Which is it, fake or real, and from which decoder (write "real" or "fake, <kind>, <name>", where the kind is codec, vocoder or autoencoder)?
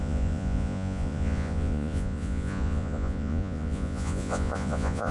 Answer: fake, vocoder, Vocos